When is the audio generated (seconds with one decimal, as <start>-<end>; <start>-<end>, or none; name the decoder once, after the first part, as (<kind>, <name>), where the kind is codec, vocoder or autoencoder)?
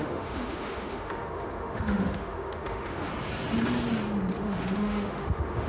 0.0-3.1 (autoencoder, DAC-VAE); 4.4-5.7